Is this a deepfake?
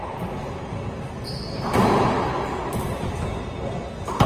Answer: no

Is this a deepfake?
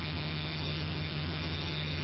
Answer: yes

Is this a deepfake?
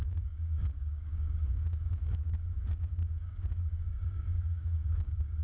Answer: yes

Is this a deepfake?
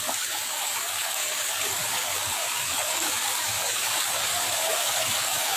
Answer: yes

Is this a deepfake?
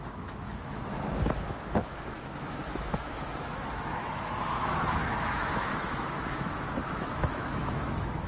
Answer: yes